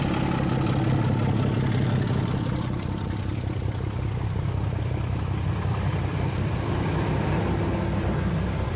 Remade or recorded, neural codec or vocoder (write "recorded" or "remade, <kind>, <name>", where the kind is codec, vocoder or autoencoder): recorded